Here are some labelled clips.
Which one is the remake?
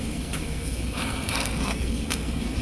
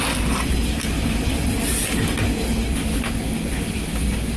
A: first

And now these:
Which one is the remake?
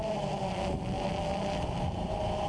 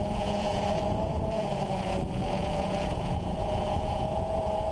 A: second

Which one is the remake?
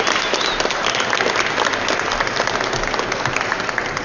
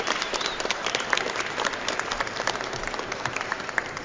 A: second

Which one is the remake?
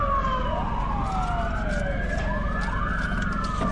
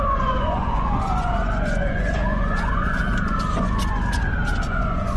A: second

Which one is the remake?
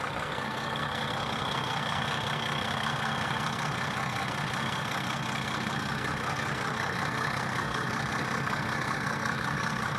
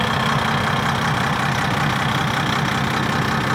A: first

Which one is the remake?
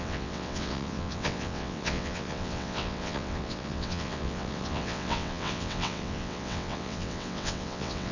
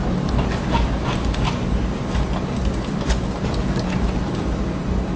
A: first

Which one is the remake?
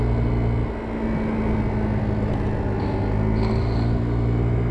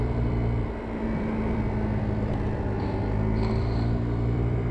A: second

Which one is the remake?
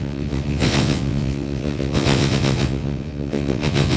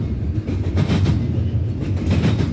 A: first